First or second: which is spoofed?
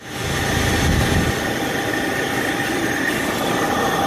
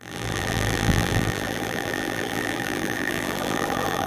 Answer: second